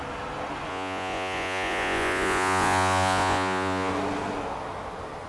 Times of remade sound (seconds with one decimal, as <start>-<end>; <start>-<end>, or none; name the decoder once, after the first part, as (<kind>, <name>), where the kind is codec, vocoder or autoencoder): 0.7-3.9 (vocoder, Vocos)